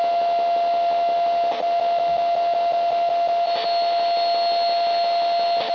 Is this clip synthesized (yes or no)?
no